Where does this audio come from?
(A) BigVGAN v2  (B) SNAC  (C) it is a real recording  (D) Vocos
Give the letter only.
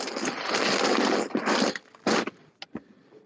C